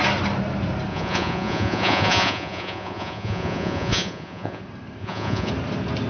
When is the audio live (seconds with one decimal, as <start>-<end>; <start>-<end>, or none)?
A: 0.0-0.9; 4.6-5.0; 5.5-6.1